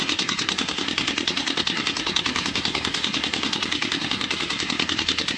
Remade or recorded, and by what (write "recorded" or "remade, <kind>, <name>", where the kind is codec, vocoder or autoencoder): remade, codec, SNAC